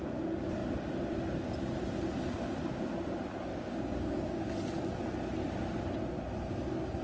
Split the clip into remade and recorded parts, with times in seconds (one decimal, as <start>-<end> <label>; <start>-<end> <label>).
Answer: 0.0-3.5 recorded; 3.5-4.5 remade; 4.5-7.0 recorded